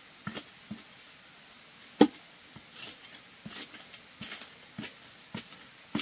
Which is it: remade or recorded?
recorded